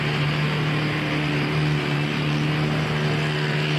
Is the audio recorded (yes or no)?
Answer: yes